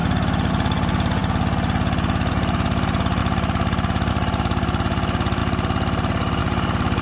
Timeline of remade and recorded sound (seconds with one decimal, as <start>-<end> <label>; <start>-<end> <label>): 0.0-0.5 recorded; 0.5-1.2 remade; 1.2-2.3 recorded; 2.3-3.2 remade; 3.2-4.1 recorded; 4.1-5.4 remade; 5.4-6.4 recorded; 6.4-7.0 remade